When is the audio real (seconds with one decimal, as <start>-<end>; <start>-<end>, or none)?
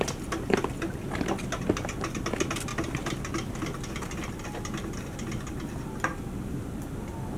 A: 0.0-7.4